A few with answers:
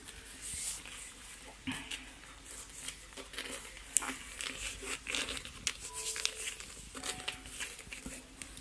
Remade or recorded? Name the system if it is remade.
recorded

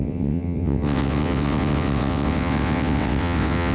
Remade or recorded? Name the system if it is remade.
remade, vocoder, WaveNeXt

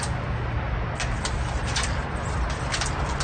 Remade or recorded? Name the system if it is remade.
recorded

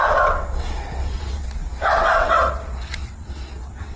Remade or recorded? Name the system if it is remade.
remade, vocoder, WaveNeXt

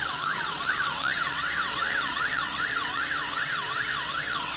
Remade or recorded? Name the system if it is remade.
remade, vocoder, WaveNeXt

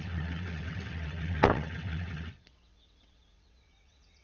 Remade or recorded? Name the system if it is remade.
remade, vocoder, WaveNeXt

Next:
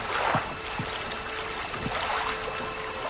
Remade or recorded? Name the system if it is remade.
recorded